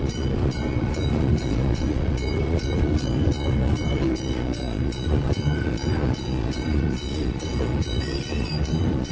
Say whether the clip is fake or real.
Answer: fake